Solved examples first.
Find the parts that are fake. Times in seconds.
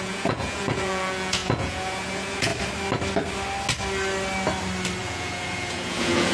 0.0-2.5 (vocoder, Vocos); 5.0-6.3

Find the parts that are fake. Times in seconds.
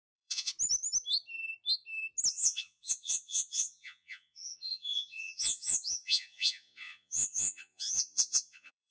0.0-0.5 (vocoder, Vocos); 2.3-8.9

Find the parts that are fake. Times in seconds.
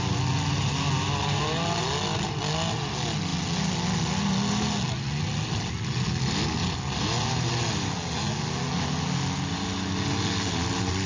none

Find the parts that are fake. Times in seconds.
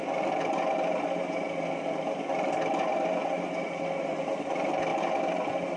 none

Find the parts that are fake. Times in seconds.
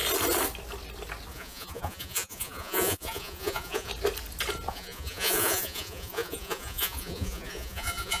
1.3-3.9 (vocoder, Vocos); 4.7-8.2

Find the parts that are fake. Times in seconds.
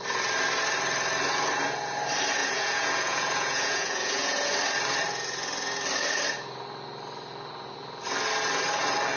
2.4-4.5 (vocoder, Vocos)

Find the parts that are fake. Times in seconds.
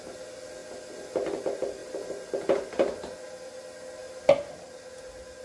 none